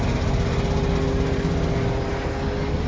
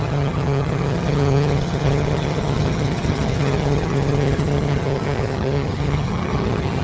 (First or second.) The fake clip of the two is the second